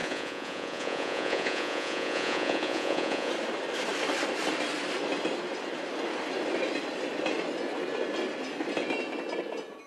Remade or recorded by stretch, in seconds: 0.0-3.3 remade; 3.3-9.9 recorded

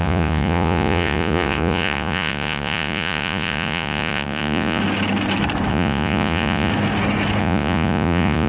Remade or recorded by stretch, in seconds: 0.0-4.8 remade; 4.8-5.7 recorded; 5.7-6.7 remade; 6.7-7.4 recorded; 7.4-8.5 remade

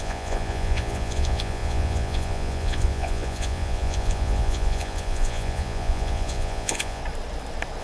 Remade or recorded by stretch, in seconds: 0.0-7.0 remade; 7.0-7.8 recorded

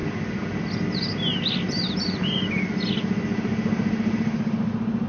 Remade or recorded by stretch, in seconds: 0.0-5.1 recorded

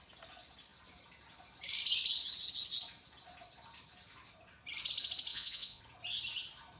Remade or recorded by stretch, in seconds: 0.0-5.3 recorded; 5.3-5.8 remade; 5.8-6.8 recorded

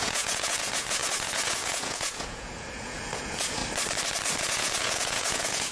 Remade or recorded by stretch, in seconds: 0.0-3.6 remade; 3.6-4.4 recorded; 4.4-5.7 remade

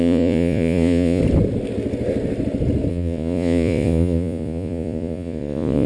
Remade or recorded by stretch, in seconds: 0.0-1.2 remade; 1.2-2.9 recorded; 2.9-5.9 remade